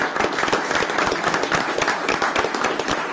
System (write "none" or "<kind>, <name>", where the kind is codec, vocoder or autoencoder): none